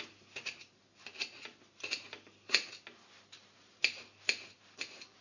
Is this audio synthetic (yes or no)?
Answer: no